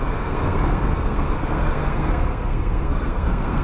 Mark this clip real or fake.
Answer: fake